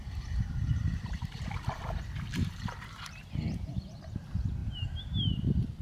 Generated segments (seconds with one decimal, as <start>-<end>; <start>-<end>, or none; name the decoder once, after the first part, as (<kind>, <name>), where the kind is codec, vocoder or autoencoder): 0.0-5.8 (vocoder, BigVGAN v2)